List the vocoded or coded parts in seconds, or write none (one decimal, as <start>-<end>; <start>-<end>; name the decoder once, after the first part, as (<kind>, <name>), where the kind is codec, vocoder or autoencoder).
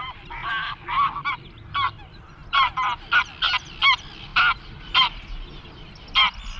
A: none